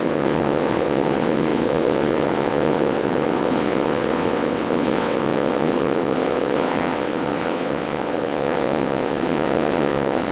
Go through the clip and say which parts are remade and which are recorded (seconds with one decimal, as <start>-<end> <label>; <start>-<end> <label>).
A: 0.0-10.3 remade